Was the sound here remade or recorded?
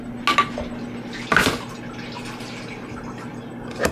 recorded